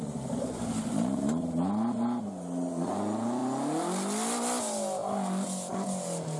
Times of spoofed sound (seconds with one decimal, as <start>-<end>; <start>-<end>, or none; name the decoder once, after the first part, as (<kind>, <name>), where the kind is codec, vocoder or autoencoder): none